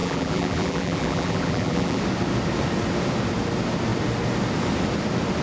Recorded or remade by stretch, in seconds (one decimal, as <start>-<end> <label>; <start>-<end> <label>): 0.0-2.0 remade; 2.0-5.4 recorded